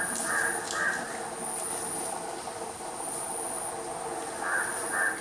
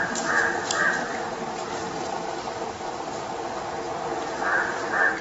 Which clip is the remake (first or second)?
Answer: second